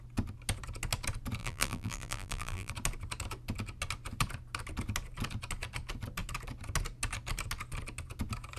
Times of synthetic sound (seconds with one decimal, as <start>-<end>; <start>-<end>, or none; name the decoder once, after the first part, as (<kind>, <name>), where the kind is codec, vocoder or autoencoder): 1.4-2.7 (vocoder, BigVGAN v2)